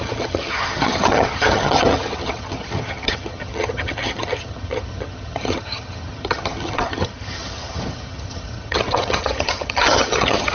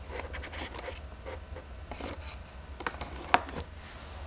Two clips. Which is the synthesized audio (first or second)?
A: first